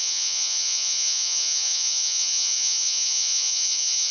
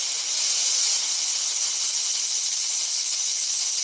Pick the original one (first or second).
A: second